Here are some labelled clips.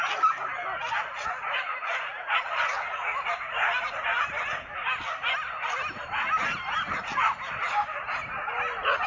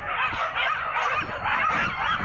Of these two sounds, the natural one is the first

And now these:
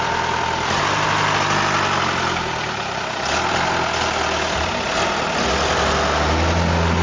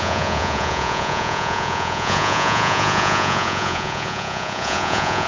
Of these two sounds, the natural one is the first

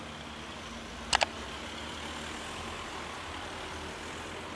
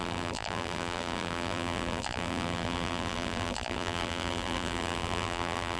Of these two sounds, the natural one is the first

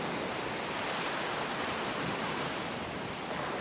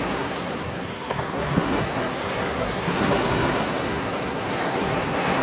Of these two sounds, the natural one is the first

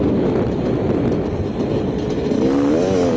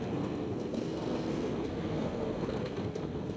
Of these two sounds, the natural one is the first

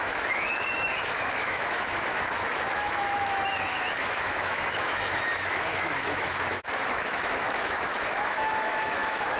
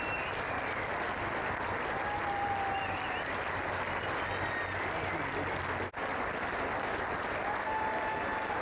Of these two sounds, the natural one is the second